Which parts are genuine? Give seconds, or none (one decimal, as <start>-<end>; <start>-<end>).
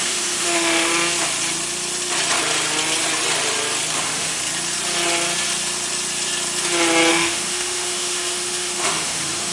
0.9-4.0; 4.4-7.1